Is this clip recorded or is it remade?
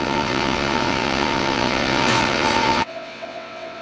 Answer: remade